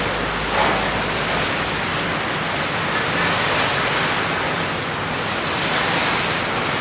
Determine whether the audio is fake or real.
real